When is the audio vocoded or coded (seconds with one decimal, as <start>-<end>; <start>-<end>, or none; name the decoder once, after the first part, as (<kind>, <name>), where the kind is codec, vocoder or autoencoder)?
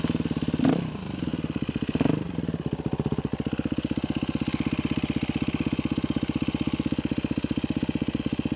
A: 1.3-2.8 (vocoder, BigVGAN v2)